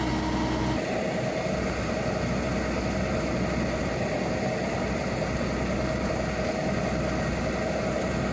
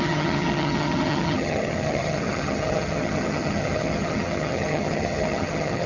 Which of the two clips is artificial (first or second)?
second